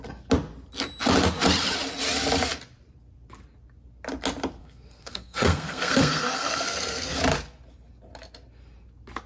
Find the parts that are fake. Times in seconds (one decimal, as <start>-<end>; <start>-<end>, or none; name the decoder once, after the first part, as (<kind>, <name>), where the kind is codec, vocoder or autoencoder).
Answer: 4.6-7.2 (codec, SNAC)